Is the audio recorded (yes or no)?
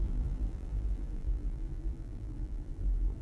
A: no